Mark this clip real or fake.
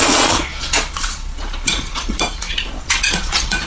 fake